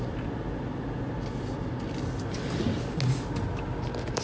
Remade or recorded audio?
recorded